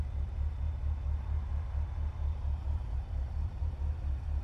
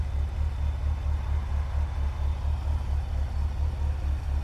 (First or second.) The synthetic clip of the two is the first